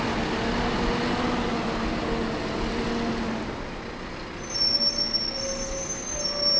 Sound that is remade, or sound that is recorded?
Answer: recorded